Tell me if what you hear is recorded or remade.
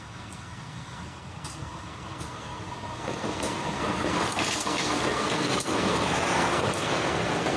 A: remade